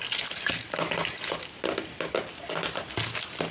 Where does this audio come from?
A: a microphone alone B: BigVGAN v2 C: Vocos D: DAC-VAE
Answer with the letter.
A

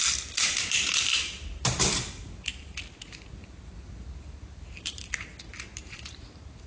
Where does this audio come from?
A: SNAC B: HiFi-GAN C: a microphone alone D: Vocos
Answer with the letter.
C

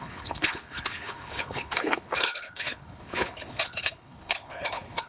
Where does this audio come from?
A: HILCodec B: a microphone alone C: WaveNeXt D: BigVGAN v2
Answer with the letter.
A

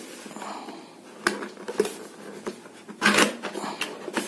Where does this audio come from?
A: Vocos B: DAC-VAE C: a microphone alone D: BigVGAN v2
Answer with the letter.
C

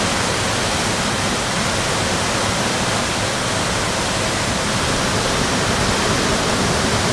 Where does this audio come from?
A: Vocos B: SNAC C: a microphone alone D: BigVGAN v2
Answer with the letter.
C